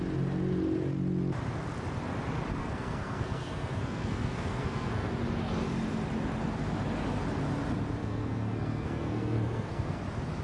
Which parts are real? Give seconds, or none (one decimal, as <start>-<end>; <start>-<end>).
0.0-2.6; 5.1-8.0; 10.0-10.4

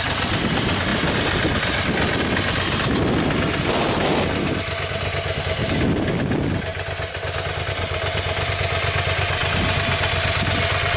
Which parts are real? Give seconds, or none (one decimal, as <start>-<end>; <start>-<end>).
0.0-11.0